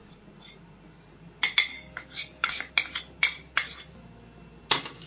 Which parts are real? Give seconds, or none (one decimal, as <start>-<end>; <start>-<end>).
0.0-1.7; 2.7-5.1